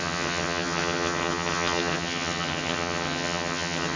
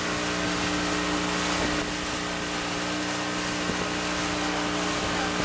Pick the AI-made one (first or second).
first